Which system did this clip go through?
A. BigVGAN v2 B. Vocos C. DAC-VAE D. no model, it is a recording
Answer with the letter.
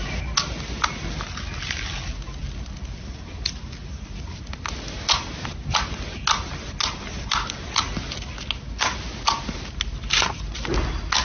D